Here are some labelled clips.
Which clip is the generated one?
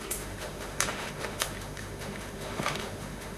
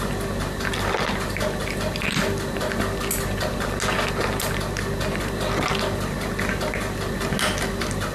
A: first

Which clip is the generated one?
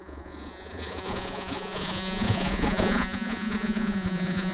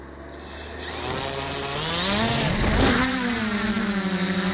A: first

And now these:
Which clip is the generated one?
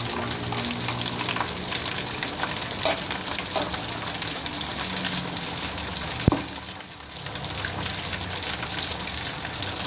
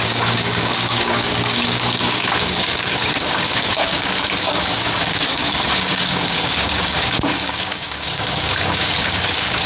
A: second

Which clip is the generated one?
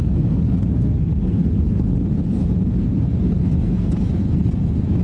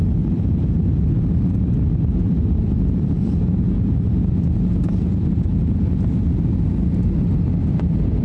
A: first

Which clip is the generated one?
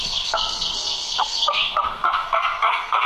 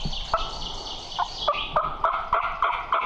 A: first